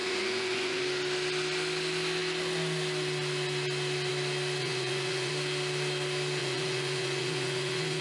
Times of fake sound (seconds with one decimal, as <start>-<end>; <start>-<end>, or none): 0.0-0.8; 4.6-5.3; 6.4-8.0